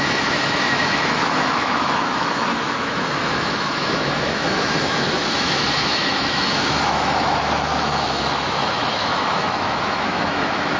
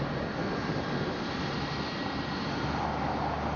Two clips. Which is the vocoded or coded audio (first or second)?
first